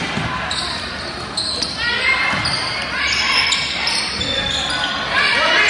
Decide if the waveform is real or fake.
real